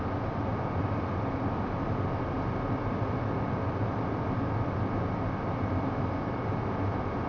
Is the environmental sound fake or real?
real